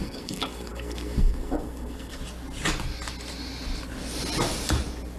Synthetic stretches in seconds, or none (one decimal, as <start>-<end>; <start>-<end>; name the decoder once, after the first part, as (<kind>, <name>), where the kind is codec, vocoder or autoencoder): 0.0-2.2 (codec, SNAC)